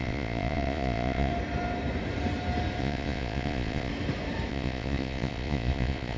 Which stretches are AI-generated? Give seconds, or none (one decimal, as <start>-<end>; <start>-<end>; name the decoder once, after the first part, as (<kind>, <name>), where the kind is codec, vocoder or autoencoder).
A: 0.0-1.3 (vocoder, Vocos); 2.8-3.9; 4.5-6.2

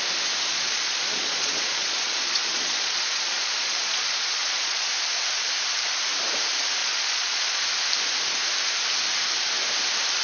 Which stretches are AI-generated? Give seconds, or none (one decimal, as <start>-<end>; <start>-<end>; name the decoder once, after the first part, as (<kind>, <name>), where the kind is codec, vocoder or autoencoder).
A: 0.5-4.9 (vocoder, Vocos); 6.8-7.6

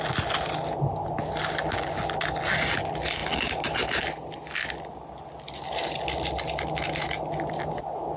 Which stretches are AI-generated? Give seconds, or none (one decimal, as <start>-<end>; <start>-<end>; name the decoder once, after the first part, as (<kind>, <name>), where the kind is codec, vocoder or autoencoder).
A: none